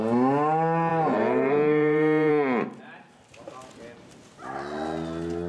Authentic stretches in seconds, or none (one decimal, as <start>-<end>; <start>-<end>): 0.0-0.9; 2.3-5.5